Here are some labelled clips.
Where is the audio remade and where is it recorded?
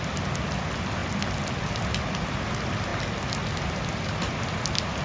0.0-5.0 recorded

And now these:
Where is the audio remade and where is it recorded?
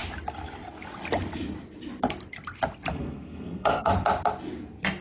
0.0-2.9 recorded; 2.9-3.9 remade; 3.9-5.0 recorded